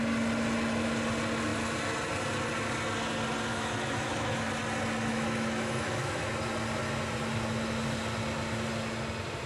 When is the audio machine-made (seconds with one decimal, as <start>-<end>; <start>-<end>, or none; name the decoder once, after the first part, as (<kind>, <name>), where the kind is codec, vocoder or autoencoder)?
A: 3.5-4.5 (autoencoder, DAC-VAE); 5.1-6.3